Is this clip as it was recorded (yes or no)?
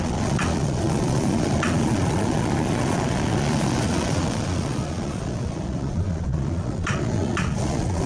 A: no